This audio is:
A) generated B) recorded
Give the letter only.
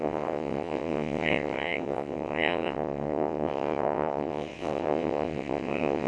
A